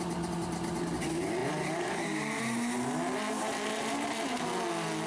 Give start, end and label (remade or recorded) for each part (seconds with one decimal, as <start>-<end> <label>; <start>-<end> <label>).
0.0-1.4 recorded; 1.4-2.4 remade; 2.4-5.1 recorded